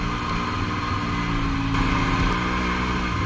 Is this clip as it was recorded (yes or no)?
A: yes